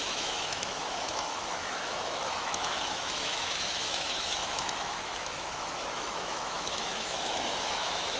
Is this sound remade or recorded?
remade